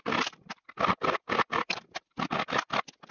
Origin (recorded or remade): remade